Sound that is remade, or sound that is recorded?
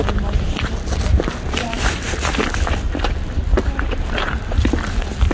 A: recorded